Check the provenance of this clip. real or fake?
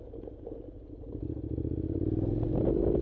real